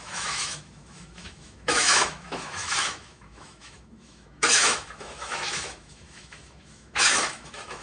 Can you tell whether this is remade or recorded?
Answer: remade